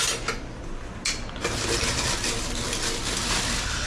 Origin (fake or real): real